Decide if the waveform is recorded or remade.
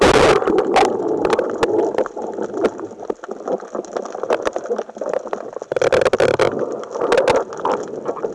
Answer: recorded